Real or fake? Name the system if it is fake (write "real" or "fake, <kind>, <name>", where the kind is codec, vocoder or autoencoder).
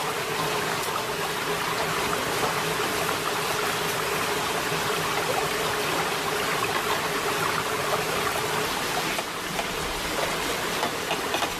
real